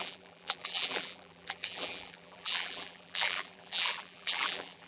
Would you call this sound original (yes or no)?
no